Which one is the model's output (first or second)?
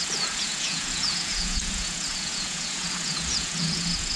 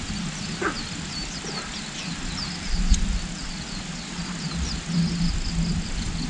first